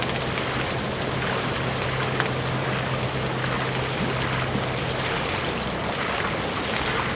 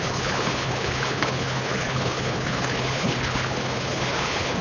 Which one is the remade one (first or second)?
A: second